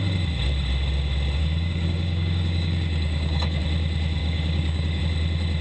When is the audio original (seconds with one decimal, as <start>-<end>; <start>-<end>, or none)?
0.0-1.4; 3.6-4.2; 5.0-5.6